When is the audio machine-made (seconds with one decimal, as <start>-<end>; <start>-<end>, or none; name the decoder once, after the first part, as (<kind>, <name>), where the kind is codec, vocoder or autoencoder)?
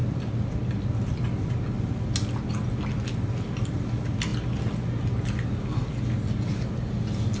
none